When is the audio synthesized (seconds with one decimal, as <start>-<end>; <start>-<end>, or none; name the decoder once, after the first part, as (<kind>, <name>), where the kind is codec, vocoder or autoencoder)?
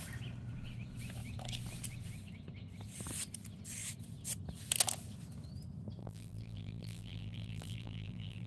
6.0-8.5 (vocoder, BigVGAN v2)